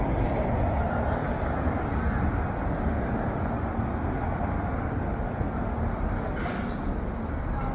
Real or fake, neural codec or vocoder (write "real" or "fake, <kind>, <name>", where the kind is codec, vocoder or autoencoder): real